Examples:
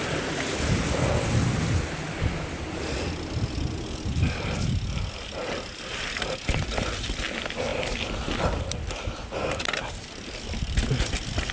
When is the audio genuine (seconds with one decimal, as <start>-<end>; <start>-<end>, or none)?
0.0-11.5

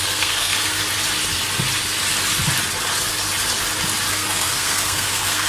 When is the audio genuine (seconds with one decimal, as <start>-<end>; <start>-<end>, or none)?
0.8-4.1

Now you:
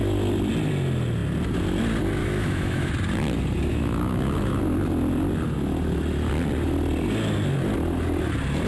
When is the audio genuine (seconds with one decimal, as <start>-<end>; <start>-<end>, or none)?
0.0-2.2; 2.9-3.7; 4.6-8.7

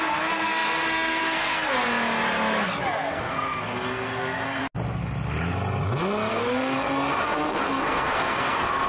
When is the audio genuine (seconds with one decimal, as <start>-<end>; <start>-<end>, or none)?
1.7-3.1; 4.6-6.3

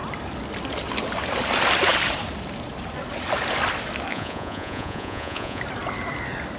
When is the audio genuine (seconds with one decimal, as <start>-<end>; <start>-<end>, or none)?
0.0-4.1; 5.6-6.6

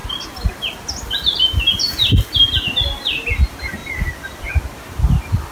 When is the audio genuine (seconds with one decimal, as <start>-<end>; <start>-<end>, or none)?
0.0-3.8; 4.5-5.5